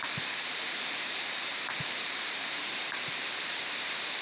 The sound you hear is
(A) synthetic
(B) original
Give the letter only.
A